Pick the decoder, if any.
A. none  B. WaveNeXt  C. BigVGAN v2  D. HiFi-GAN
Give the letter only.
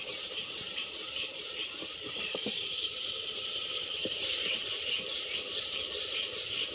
C